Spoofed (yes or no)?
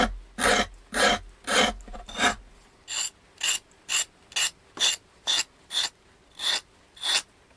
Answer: no